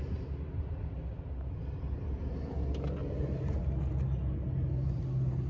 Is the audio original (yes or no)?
yes